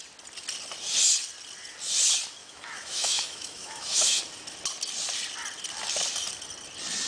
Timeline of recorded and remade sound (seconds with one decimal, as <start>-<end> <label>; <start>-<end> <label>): 0.0-2.4 recorded; 2.4-4.2 remade; 4.2-7.1 recorded